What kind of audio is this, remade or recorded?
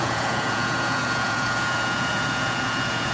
remade